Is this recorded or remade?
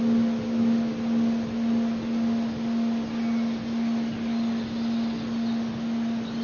recorded